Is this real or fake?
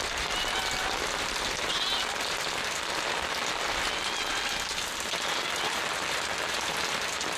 real